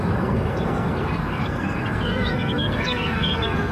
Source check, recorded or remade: remade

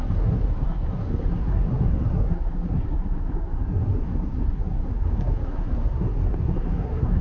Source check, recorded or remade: remade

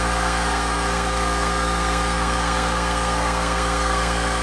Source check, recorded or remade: remade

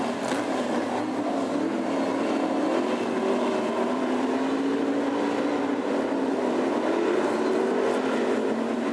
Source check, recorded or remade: recorded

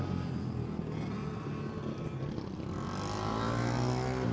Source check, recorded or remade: recorded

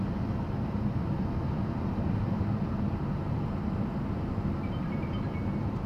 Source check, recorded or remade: recorded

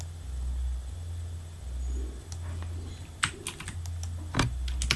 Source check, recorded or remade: recorded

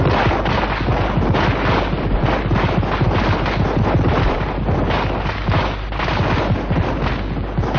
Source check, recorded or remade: recorded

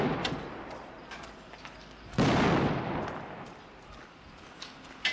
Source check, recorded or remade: recorded